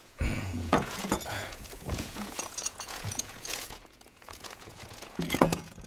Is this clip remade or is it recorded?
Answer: remade